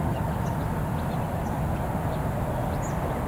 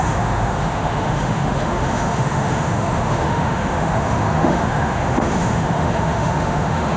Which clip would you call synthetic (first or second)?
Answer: second